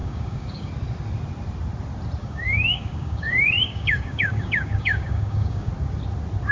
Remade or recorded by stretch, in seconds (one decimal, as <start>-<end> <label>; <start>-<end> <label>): 0.0-0.7 remade; 0.7-2.2 recorded; 2.2-5.7 remade; 5.7-6.5 recorded